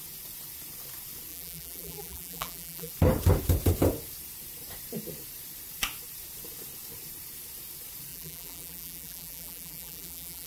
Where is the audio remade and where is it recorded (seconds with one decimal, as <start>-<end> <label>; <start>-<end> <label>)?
0.0-1.3 recorded; 1.3-2.9 remade; 2.9-8.1 recorded; 8.1-10.5 remade